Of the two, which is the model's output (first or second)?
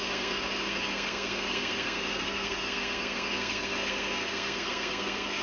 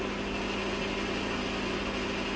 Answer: first